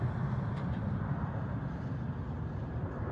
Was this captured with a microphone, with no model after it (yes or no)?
yes